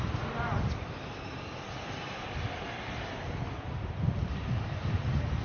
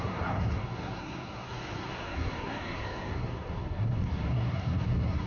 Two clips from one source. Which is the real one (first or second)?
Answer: first